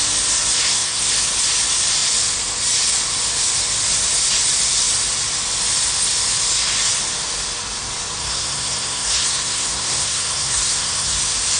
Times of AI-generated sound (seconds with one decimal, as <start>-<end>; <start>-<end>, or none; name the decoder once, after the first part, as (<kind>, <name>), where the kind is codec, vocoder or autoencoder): 0.6-1.1 (codec, SNAC); 8.2-11.2